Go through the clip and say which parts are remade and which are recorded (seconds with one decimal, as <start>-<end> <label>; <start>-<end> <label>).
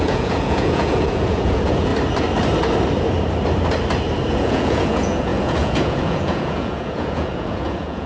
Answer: 0.0-1.9 remade; 1.9-4.3 recorded; 4.3-8.1 remade